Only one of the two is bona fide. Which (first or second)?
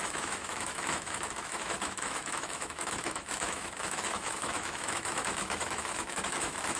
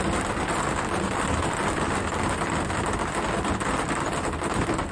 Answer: second